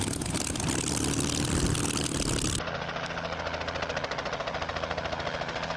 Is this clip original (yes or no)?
yes